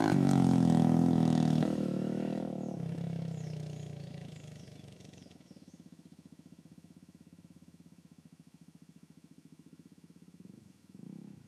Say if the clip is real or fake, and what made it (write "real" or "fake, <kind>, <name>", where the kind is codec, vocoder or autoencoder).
fake, autoencoder, DAC-VAE